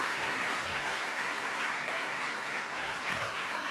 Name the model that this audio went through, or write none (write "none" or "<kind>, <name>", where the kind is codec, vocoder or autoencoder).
codec, SNAC